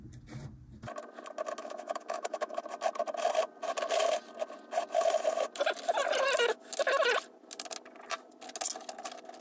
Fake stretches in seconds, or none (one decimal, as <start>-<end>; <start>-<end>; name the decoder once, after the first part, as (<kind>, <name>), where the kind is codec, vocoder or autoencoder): 1.6-2.6 (autoencoder, DAC-VAE)